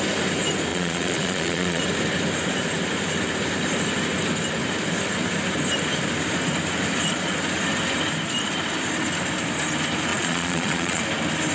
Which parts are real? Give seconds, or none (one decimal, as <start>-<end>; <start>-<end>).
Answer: 0.0-0.7; 1.8-10.1; 11.0-11.5